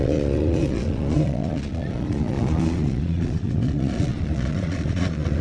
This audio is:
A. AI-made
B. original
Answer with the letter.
A